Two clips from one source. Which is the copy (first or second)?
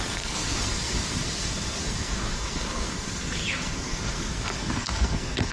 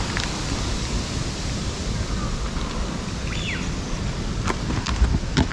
first